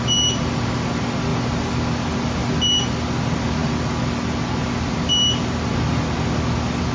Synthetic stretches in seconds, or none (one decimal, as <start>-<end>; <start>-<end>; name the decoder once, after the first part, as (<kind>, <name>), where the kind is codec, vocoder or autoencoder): none